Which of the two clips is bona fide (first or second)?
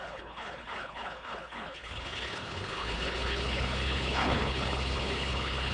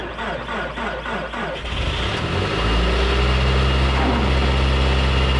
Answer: second